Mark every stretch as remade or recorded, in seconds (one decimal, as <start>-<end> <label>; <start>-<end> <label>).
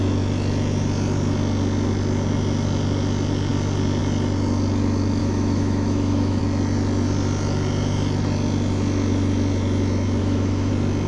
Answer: 0.0-5.2 recorded; 5.2-6.4 remade; 6.4-10.2 recorded; 10.2-10.7 remade; 10.7-11.1 recorded